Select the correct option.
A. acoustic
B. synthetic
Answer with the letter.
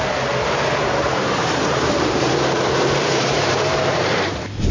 B